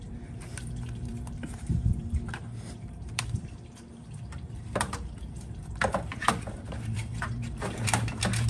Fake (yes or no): yes